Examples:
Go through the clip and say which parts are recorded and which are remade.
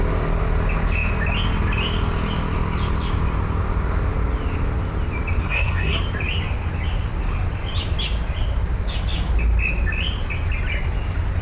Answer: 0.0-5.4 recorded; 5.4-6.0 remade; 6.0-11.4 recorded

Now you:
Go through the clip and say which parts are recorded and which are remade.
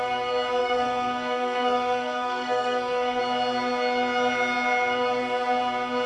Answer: 0.0-0.6 recorded; 0.6-3.2 remade; 3.2-6.1 recorded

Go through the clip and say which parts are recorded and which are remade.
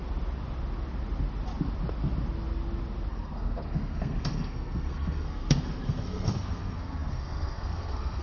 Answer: 0.0-3.1 recorded; 3.1-8.2 remade